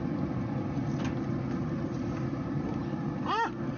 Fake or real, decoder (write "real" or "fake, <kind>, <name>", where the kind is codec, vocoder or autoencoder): fake, vocoder, BigVGAN v2